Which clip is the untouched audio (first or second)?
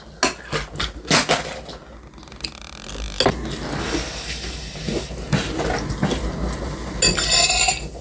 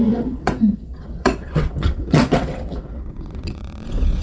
first